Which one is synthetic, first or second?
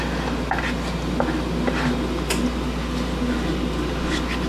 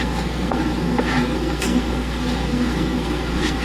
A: second